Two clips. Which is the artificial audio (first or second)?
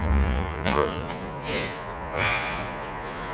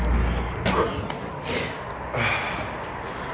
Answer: first